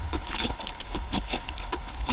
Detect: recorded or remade remade